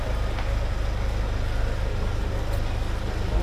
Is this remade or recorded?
recorded